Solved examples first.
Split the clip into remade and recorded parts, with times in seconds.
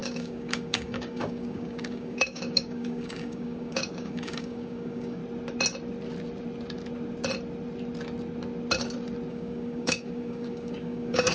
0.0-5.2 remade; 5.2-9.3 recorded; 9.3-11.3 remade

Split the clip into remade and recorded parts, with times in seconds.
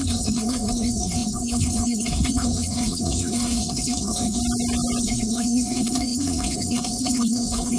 0.0-4.4 remade; 4.4-5.0 recorded; 5.0-7.8 remade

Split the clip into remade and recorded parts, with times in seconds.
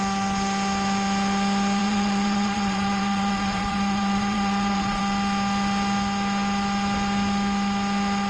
0.0-1.8 recorded; 1.8-5.0 remade; 5.0-8.3 recorded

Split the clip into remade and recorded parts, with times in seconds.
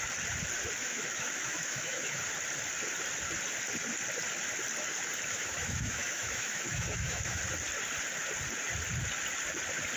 0.0-0.8 recorded; 0.8-2.2 remade; 2.2-5.3 recorded; 5.3-7.4 remade; 7.4-10.0 recorded